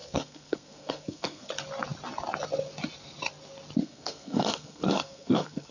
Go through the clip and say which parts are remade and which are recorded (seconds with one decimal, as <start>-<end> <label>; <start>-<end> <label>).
0.0-1.5 remade; 1.5-3.8 recorded; 3.8-5.7 remade